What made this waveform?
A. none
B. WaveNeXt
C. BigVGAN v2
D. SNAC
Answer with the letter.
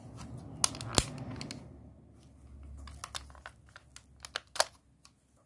A